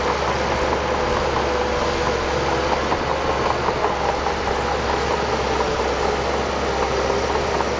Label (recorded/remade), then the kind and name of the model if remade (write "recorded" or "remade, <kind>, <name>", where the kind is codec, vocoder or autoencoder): recorded